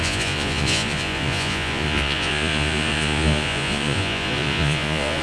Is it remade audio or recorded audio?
remade